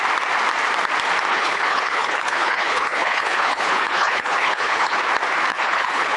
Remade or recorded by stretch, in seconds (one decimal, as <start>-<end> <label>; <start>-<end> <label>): 0.0-1.3 recorded; 1.3-5.0 remade; 5.0-5.5 recorded; 5.5-6.2 remade